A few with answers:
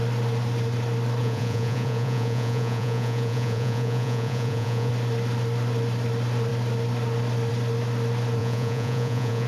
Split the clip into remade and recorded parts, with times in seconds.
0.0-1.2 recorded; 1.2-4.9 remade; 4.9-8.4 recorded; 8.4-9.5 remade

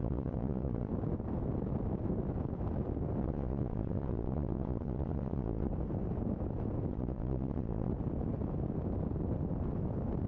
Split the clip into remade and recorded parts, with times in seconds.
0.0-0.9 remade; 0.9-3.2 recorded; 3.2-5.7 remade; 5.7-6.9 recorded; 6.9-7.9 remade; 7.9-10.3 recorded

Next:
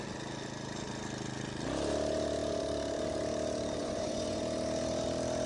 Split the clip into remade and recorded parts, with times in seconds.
0.0-3.8 recorded; 3.8-4.4 remade; 4.4-5.5 recorded

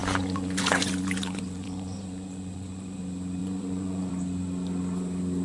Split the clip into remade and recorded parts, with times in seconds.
0.0-3.0 remade; 3.0-3.4 recorded; 3.4-4.1 remade; 4.1-5.4 recorded

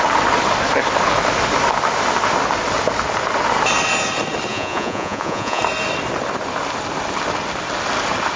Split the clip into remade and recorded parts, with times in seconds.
0.0-4.5 recorded; 4.5-5.6 remade; 5.6-8.4 recorded

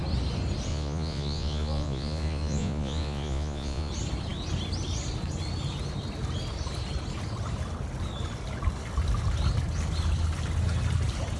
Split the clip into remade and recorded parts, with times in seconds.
0.0-0.7 recorded; 0.7-3.9 remade; 3.9-11.4 recorded